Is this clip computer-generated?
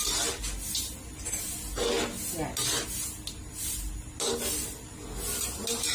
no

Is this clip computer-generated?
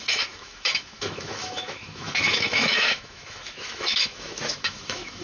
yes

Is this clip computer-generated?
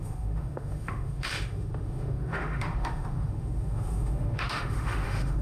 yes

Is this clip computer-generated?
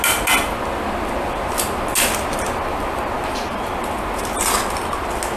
no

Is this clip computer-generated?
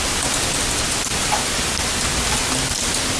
no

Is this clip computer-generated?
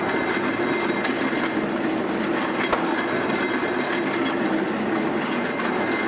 no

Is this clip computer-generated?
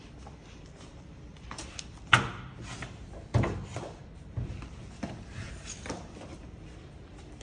no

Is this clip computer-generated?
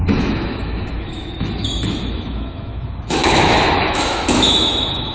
yes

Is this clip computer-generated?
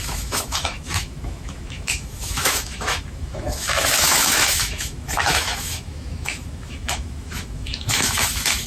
yes